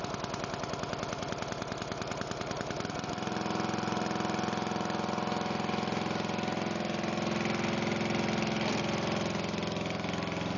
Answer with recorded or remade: recorded